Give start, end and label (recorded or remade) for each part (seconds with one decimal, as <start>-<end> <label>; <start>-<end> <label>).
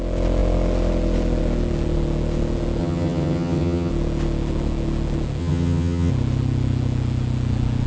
0.0-2.8 recorded; 2.8-3.9 remade; 3.9-5.4 recorded; 5.4-6.1 remade; 6.1-7.9 recorded